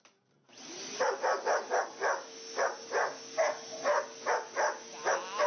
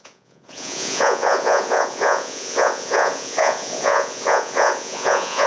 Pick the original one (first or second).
first